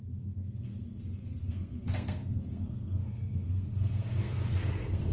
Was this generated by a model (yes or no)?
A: yes